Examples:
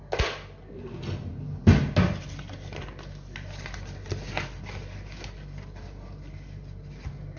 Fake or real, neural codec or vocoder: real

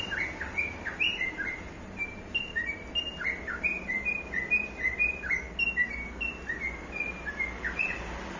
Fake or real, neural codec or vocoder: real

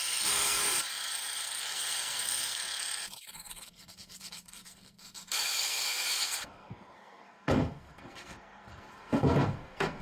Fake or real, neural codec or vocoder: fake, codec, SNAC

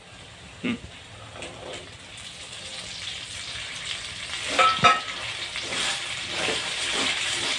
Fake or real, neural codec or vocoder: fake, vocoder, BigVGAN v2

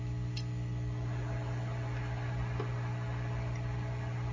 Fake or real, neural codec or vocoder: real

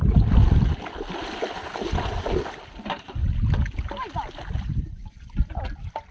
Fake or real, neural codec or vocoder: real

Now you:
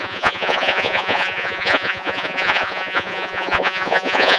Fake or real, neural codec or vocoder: fake, vocoder, Vocos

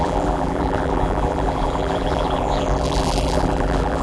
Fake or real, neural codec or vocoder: fake, vocoder, BigVGAN v2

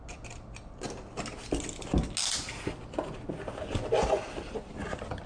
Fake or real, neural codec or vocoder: real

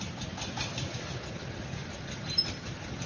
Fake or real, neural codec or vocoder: real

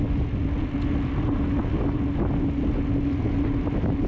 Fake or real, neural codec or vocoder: real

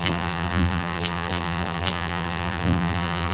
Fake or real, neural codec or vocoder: fake, vocoder, BigVGAN v2